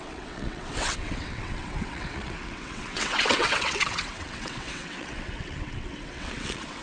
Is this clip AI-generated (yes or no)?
yes